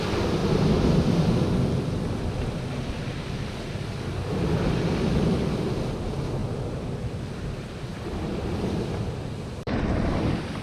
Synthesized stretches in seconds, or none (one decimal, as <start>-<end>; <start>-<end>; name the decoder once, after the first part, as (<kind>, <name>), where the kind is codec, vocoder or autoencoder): 0.4-4.3 (vocoder, BigVGAN v2); 6.4-7.0; 7.9-10.6